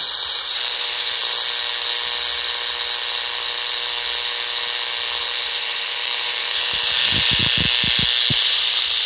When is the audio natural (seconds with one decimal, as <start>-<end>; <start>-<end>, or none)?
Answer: 1.2-5.2; 7.4-8.3